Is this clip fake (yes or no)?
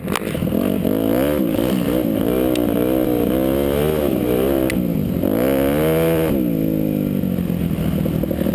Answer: no